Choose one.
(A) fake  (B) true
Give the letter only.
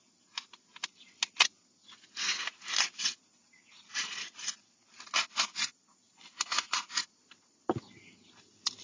B